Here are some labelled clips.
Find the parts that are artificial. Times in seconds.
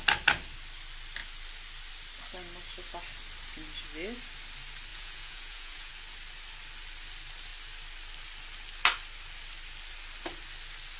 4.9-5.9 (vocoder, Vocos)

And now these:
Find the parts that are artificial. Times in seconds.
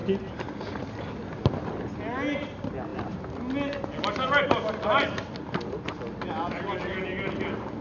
none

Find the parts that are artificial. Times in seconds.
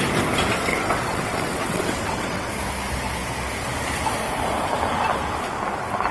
0.7-2.5 (vocoder, WaveNeXt)